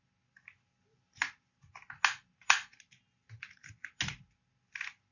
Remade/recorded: recorded